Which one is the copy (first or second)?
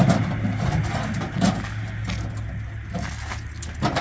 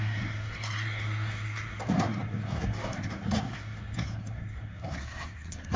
second